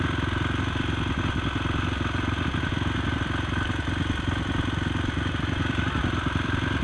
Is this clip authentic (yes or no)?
yes